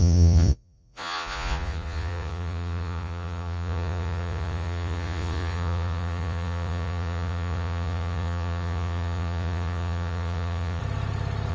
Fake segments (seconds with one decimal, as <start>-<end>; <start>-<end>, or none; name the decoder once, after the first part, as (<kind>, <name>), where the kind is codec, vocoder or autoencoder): 0.0-10.8 (vocoder, Vocos)